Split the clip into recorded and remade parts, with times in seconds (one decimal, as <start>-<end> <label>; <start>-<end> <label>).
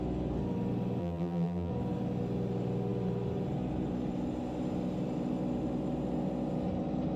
0.0-1.0 recorded; 1.0-1.7 remade; 1.7-7.2 recorded